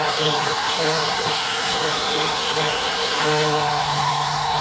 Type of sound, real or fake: fake